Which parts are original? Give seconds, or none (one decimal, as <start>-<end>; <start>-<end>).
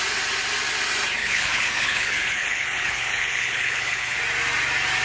0.0-1.2; 4.2-5.0